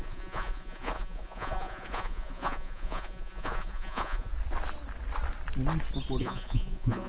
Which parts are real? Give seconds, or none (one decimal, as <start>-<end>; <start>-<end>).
4.3-6.2